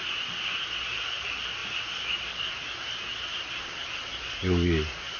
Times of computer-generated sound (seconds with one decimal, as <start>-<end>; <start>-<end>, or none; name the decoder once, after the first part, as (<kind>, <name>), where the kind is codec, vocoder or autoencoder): none